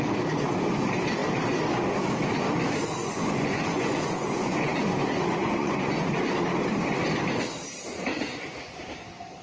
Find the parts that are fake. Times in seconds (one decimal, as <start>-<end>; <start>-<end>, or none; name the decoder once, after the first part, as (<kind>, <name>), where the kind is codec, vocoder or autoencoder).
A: 3.0-6.2 (vocoder, Vocos); 8.1-8.8